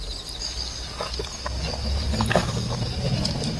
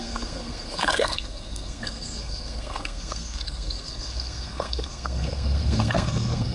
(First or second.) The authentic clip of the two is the first